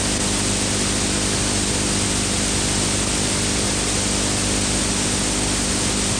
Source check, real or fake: real